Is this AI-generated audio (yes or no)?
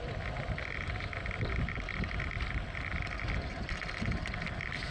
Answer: no